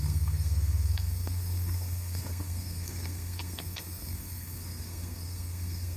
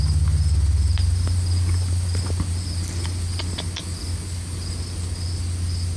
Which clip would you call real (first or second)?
second